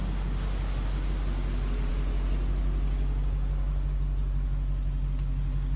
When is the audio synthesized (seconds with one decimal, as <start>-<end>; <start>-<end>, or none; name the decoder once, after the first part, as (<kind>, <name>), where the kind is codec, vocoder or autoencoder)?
none